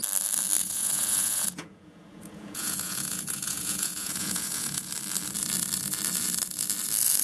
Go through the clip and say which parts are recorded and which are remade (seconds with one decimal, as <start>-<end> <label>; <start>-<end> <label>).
0.0-0.6 recorded; 0.6-4.9 remade; 4.9-7.2 recorded